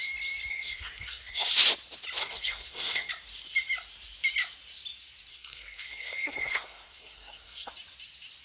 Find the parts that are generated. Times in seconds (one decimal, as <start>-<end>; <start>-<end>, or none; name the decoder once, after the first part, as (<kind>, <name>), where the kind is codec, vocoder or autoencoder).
0.5-1.5 (codec, SNAC); 2.2-3.1; 5.3-7.7